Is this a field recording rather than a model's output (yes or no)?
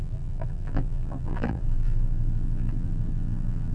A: no